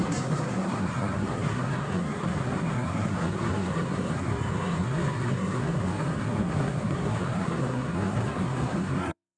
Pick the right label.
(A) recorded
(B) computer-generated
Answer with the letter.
B